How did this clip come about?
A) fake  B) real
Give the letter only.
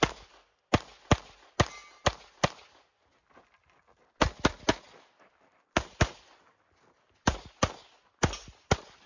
B